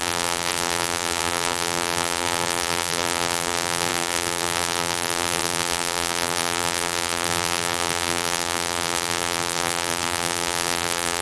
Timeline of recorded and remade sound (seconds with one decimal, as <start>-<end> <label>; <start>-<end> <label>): 0.0-11.2 remade